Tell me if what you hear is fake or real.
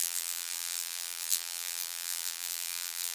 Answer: fake